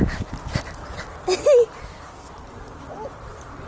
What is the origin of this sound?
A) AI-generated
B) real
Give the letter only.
B